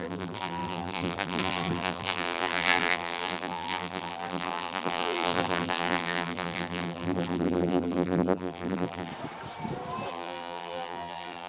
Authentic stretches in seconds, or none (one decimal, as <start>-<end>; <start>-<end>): 9.1-10.1